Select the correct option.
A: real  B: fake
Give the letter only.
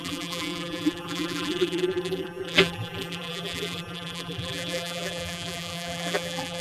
B